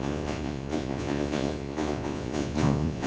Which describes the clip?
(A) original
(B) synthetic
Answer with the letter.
B